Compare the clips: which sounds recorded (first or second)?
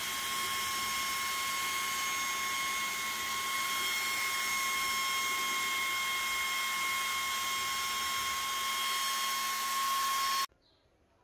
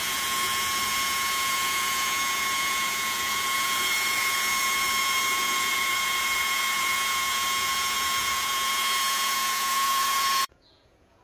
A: first